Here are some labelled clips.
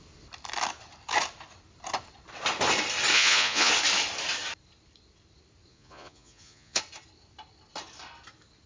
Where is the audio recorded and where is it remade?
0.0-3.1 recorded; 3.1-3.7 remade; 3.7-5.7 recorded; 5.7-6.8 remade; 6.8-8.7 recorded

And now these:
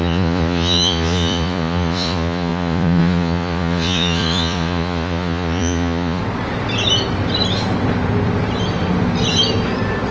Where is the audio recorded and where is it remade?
0.0-6.2 remade; 6.2-10.1 recorded

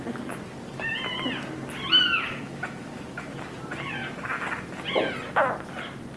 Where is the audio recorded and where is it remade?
0.0-6.2 recorded

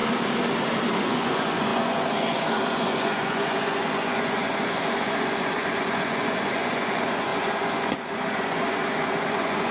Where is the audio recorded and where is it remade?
0.0-1.0 recorded; 1.0-9.7 remade

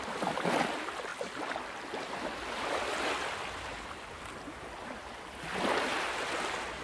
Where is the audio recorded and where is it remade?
0.0-6.8 recorded